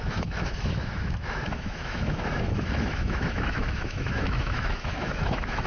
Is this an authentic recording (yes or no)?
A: no